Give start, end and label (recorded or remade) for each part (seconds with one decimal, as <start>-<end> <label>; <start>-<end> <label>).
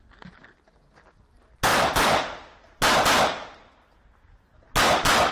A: 0.0-5.3 recorded